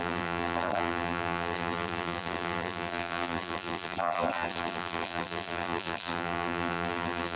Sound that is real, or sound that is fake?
fake